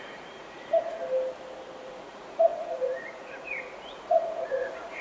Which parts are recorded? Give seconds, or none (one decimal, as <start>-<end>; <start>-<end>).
1.0-1.8